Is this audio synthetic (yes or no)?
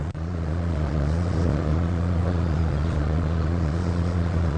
yes